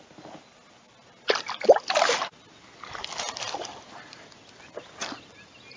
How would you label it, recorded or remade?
recorded